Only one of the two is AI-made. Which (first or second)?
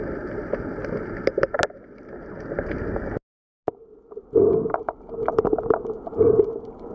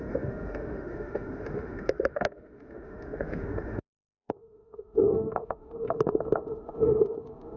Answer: second